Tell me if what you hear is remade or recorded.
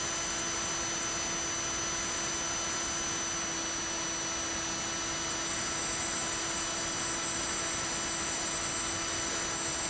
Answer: recorded